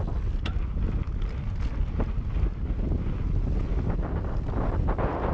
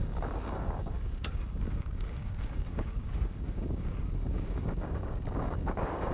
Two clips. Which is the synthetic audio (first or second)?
second